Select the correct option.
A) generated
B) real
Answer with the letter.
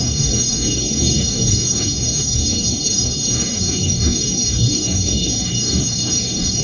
A